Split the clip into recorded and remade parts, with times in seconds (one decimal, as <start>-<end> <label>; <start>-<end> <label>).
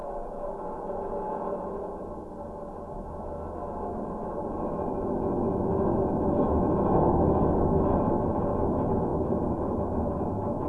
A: 0.0-2.1 remade; 2.1-10.7 recorded